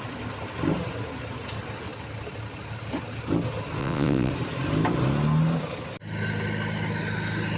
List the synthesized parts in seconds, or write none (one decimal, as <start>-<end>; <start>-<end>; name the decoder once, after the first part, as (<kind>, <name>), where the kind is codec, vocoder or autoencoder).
3.8-4.3 (vocoder, WaveNeXt)